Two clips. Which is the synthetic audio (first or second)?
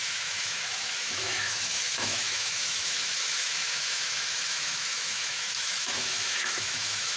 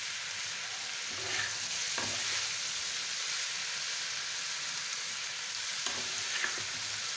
first